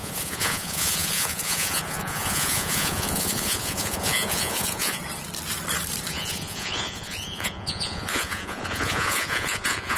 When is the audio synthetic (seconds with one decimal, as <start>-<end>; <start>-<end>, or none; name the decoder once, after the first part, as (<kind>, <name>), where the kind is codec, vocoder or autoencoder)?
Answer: 0.0-5.0 (vocoder, Vocos); 6.1-10.0